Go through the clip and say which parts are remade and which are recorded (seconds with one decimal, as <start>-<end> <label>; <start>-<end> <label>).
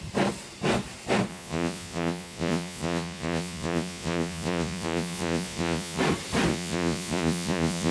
0.0-1.3 recorded; 1.3-6.0 remade; 6.0-6.5 recorded; 6.5-7.9 remade